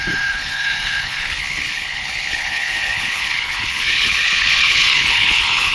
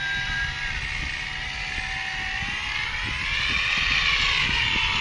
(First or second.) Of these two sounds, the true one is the second